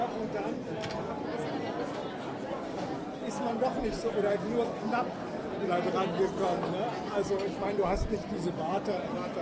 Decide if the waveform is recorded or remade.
recorded